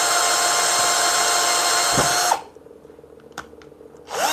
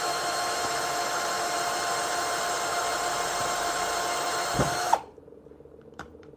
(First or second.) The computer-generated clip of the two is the second